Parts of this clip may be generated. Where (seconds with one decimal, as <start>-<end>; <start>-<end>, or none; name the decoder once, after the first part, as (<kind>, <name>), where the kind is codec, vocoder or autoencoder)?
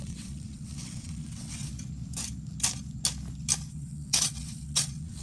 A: 0.0-1.7 (vocoder, WaveNeXt); 3.7-5.2